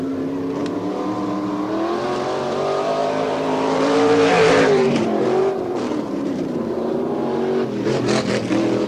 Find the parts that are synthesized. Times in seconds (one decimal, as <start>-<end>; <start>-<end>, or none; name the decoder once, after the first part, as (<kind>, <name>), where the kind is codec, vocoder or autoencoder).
3.0-7.0 (vocoder, BigVGAN v2)